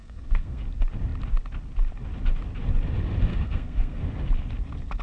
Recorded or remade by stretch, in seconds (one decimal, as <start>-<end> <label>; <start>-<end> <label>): 0.0-0.6 remade; 0.6-3.3 recorded; 3.3-4.0 remade; 4.0-5.0 recorded